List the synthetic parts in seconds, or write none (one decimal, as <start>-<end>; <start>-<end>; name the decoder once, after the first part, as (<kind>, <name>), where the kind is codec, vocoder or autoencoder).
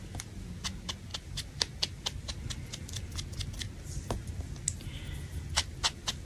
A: none